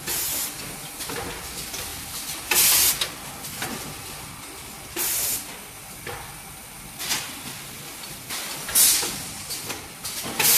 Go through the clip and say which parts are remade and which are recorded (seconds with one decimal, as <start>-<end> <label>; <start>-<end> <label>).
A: 0.0-10.6 recorded